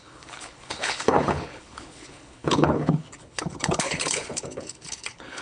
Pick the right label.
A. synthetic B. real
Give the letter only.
A